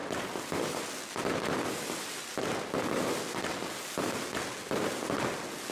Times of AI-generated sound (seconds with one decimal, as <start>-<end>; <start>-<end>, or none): none